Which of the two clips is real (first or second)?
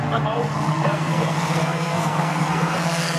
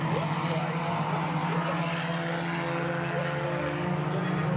second